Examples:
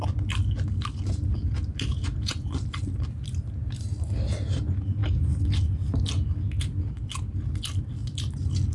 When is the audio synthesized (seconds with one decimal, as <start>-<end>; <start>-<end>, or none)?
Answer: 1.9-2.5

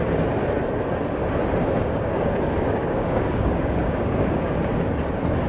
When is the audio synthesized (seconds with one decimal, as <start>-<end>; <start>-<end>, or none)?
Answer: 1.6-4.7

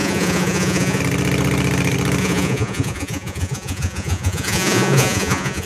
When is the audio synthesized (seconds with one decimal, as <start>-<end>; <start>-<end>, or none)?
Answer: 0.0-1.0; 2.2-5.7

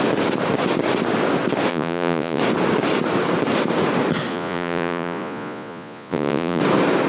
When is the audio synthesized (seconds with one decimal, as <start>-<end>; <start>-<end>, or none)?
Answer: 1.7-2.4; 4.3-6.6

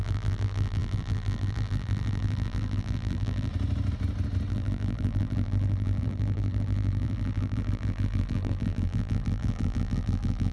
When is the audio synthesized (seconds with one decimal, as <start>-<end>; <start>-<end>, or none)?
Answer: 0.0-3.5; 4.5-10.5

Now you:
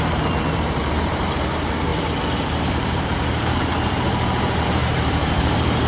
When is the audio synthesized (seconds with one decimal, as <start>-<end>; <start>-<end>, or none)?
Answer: 0.0-1.9; 2.4-5.9